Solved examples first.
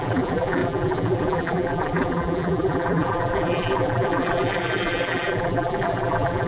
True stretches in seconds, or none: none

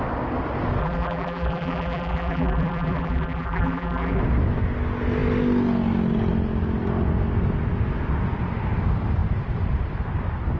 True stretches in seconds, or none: 0.0-0.8; 4.2-10.6

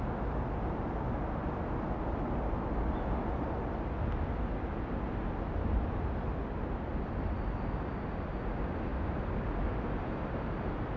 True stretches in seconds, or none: 0.0-11.0

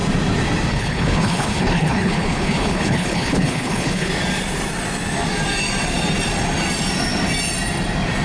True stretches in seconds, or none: 0.0-0.7; 4.1-8.2

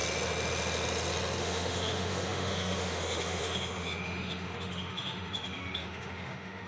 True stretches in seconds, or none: 0.0-1.4